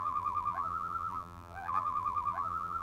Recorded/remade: remade